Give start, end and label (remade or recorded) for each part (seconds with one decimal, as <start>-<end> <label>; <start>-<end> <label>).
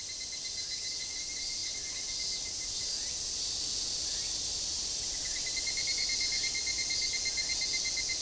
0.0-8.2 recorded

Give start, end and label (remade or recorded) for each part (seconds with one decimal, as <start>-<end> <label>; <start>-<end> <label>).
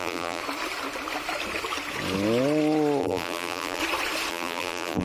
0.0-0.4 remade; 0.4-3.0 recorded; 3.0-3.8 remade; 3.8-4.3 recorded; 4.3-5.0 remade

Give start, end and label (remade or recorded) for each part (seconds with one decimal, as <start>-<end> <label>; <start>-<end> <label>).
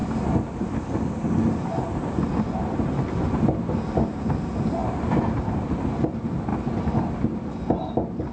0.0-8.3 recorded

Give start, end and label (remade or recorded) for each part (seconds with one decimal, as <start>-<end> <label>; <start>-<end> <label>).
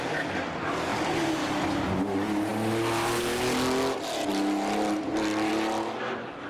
0.0-0.9 recorded; 0.9-1.6 remade; 1.6-6.5 recorded